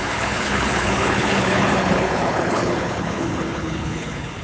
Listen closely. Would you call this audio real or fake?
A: fake